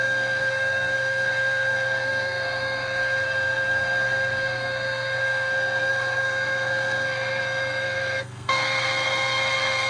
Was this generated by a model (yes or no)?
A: yes